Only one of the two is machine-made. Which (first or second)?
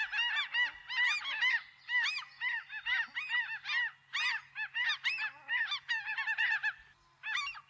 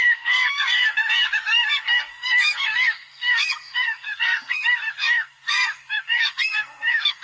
second